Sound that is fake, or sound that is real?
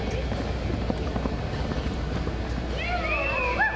real